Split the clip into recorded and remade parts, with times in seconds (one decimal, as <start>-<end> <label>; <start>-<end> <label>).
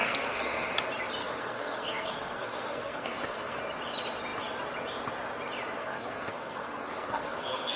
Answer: 0.0-0.7 remade; 0.7-1.2 recorded; 1.2-3.6 remade; 3.6-5.8 recorded; 5.8-7.8 remade